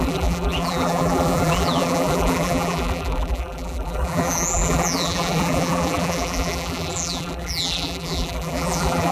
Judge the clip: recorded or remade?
remade